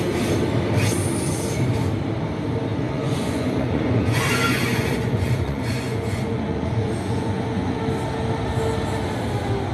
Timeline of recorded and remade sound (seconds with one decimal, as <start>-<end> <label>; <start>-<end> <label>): 0.0-2.7 recorded; 2.7-7.8 remade; 7.8-9.7 recorded

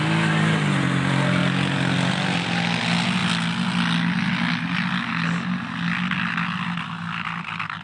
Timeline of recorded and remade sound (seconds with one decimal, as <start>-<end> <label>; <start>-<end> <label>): 0.0-7.8 recorded

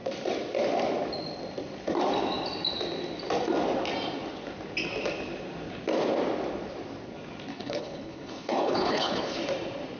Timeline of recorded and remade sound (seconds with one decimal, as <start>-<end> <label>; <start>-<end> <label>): 0.0-7.5 recorded; 7.5-9.4 remade; 9.4-10.0 recorded

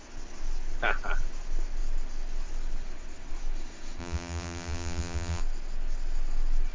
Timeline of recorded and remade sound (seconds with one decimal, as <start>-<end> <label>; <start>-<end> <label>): 0.0-4.0 recorded; 4.0-5.4 remade; 5.4-6.7 recorded

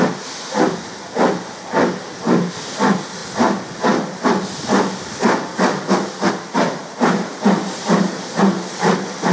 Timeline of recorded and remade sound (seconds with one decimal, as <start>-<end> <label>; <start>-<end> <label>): 0.0-6.8 recorded; 6.8-8.9 remade; 8.9-9.3 recorded

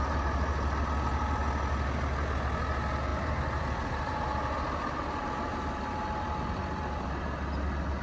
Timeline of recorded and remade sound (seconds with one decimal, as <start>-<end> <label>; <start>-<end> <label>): 0.0-3.1 recorded; 3.1-7.2 remade; 7.2-8.0 recorded

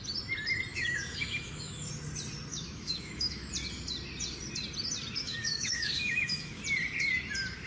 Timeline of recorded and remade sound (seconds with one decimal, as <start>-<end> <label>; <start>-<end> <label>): 0.0-0.7 recorded; 0.7-1.9 remade; 1.9-2.5 recorded; 2.5-3.5 remade; 3.5-5.2 recorded; 5.2-6.6 remade; 6.6-7.7 recorded

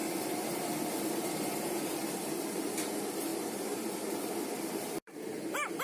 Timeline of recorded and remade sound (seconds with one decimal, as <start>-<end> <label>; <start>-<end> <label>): 0.0-0.9 remade; 0.9-3.3 recorded; 3.3-5.8 remade